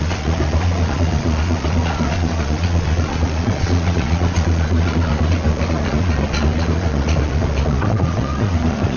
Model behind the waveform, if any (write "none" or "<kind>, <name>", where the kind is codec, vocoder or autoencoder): vocoder, Vocos